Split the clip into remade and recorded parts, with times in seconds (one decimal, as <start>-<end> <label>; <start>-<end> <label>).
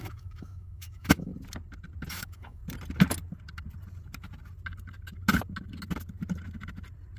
0.0-1.3 remade; 1.3-2.1 recorded; 2.1-2.6 remade; 2.6-7.2 recorded